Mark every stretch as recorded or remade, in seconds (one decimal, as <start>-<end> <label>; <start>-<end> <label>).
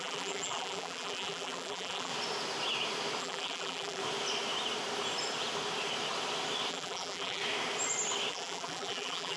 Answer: 0.0-2.1 remade; 2.1-3.2 recorded; 3.2-4.0 remade; 4.0-6.7 recorded; 6.7-7.4 remade; 7.4-8.3 recorded; 8.3-9.4 remade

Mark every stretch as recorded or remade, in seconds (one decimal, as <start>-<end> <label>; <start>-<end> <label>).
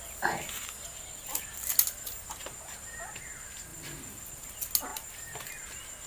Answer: 0.0-3.7 recorded; 3.7-4.3 remade; 4.3-4.9 recorded; 4.9-5.5 remade; 5.5-6.1 recorded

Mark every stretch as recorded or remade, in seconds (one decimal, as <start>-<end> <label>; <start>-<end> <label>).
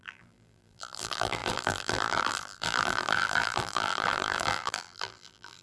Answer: 0.0-5.6 remade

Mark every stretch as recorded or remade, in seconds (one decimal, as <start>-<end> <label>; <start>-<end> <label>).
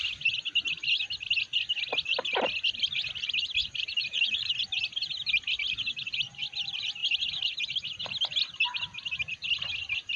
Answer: 0.0-3.6 recorded; 3.6-4.5 remade; 4.5-10.2 recorded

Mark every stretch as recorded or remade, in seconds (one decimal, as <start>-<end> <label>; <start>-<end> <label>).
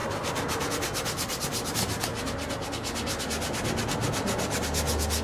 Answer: 0.0-0.7 remade; 0.7-5.2 recorded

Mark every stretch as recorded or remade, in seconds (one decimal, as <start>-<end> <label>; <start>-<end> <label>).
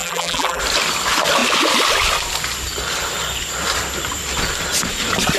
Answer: 0.0-0.6 remade; 0.6-5.4 recorded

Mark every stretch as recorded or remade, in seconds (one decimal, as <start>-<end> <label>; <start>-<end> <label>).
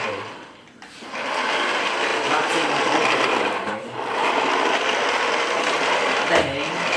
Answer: 0.0-2.1 recorded; 2.1-6.3 remade; 6.3-7.0 recorded